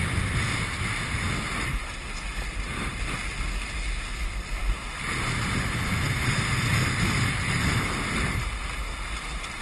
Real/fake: real